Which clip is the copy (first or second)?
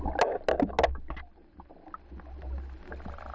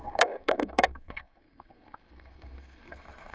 second